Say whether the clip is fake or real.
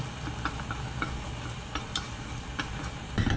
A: real